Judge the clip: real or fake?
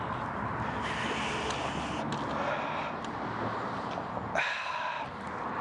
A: real